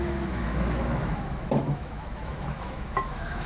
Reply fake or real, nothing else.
fake